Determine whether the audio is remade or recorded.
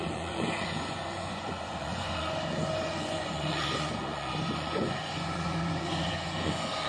remade